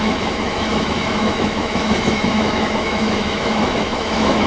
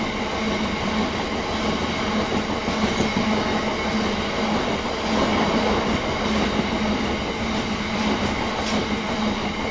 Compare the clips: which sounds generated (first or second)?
first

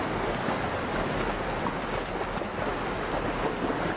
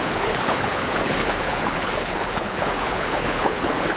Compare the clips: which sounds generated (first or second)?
second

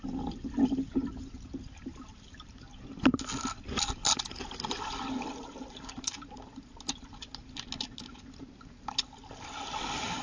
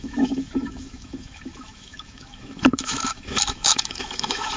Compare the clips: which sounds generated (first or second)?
second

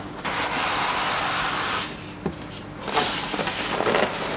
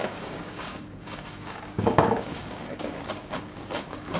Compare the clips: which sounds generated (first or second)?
second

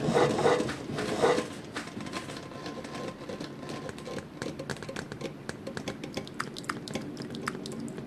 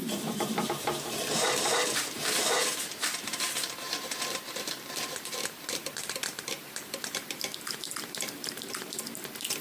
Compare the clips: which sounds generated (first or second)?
second